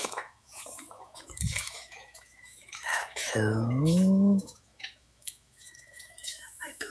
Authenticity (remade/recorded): remade